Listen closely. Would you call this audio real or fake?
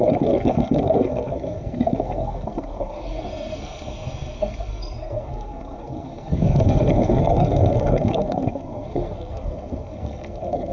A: fake